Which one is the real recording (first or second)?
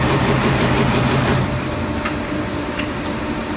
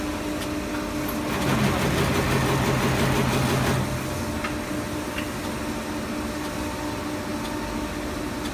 second